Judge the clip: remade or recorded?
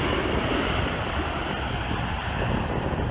recorded